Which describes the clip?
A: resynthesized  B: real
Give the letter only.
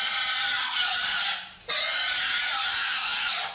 B